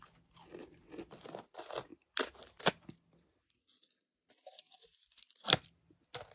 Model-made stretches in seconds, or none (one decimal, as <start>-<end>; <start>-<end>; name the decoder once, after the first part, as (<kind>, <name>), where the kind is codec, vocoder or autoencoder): none